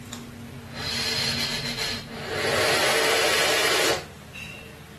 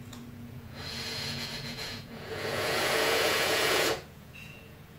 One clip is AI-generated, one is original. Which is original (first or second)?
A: first